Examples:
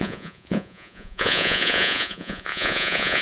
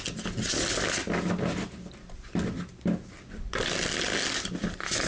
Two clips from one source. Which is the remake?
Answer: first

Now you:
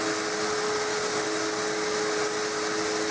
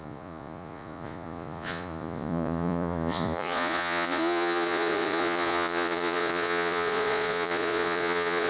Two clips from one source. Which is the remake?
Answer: second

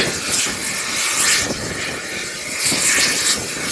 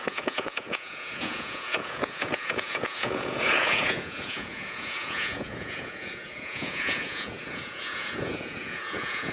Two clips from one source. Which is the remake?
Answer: second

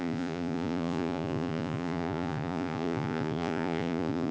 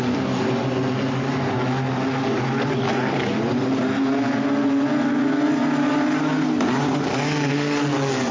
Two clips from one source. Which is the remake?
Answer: first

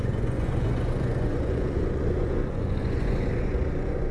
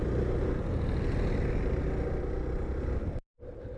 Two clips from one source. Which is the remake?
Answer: first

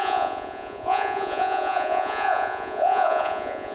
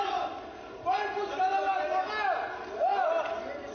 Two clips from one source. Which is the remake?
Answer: first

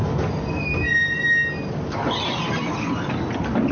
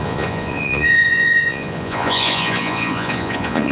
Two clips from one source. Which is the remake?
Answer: second